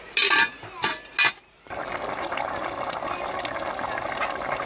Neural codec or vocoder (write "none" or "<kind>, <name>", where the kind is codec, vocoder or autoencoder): none